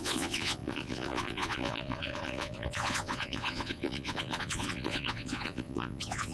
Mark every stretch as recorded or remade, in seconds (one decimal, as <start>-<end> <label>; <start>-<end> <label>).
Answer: 0.0-6.3 remade